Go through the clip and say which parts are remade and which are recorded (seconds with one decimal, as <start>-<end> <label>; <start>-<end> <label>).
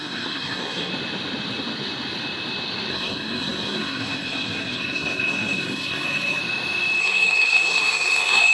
0.0-0.9 remade; 0.9-2.9 recorded; 2.9-6.4 remade; 6.4-7.0 recorded; 7.0-8.5 remade